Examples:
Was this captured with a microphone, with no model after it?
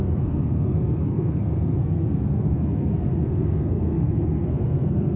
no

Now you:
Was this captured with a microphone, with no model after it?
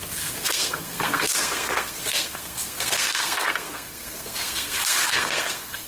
no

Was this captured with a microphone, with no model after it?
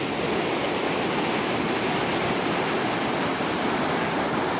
yes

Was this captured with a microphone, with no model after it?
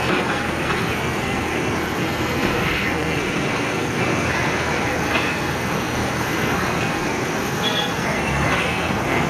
no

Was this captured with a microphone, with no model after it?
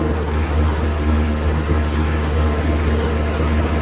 no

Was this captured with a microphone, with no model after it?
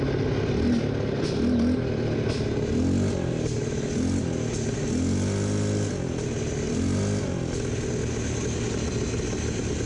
yes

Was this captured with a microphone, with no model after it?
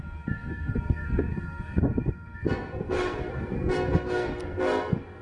no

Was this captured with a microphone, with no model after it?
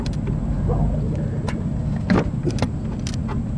yes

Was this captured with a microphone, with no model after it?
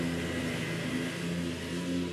yes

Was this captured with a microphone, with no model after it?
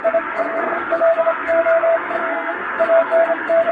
no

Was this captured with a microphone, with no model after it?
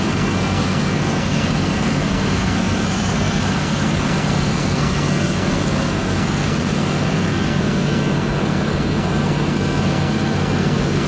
no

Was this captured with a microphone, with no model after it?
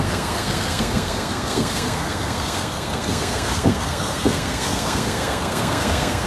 no